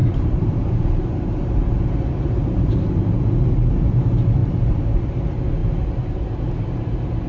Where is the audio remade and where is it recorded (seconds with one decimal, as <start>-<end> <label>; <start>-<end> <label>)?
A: 0.0-2.7 remade; 2.7-4.4 recorded; 4.4-5.0 remade; 5.0-7.3 recorded